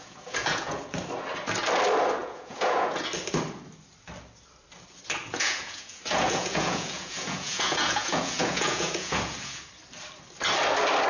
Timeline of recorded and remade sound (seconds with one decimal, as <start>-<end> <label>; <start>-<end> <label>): 0.0-0.8 remade; 0.8-2.2 recorded; 2.2-3.1 remade; 3.1-5.2 recorded; 5.2-9.7 remade; 9.7-11.1 recorded